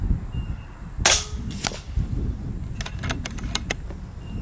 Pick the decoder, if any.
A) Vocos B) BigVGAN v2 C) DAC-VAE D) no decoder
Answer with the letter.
D